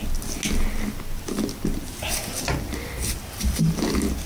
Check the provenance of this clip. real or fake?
real